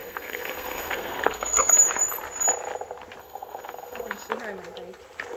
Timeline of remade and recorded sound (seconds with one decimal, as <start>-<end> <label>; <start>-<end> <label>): 0.0-1.7 remade; 1.7-3.2 recorded; 3.2-4.3 remade; 4.3-5.4 recorded